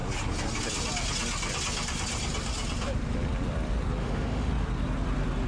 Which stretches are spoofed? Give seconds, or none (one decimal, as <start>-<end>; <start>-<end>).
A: 4.0-4.5